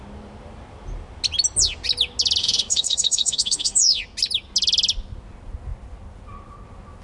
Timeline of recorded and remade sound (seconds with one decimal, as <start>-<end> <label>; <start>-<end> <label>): 0.0-2.4 recorded; 2.4-4.0 remade; 4.0-7.0 recorded